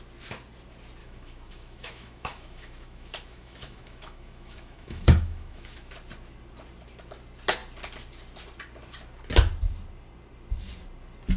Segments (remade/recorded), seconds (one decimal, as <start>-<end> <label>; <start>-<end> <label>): 0.0-1.0 recorded; 1.0-5.9 remade; 5.9-11.4 recorded